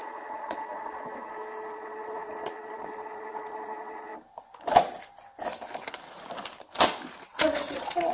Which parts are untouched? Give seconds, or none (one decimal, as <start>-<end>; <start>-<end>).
1.1-1.7; 4.1-7.2